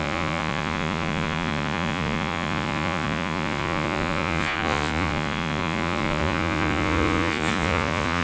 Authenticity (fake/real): fake